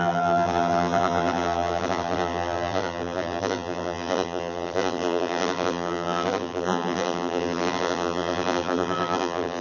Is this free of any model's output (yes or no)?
no